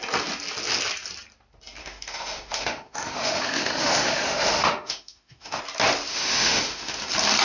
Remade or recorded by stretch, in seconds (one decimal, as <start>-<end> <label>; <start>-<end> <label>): 0.0-1.8 recorded; 1.8-5.6 remade; 5.6-6.1 recorded; 6.1-7.0 remade; 7.0-7.4 recorded